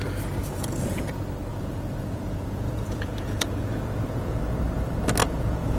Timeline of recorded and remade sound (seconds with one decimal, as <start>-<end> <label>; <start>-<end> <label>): 0.0-0.4 recorded; 0.4-1.1 remade; 1.1-1.5 recorded; 1.5-4.4 remade; 4.4-5.2 recorded; 5.2-5.8 remade